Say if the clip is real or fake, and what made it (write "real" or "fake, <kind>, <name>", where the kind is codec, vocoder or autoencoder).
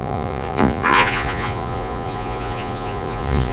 fake, vocoder, Vocos